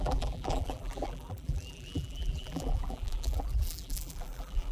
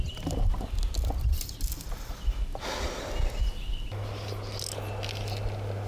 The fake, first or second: first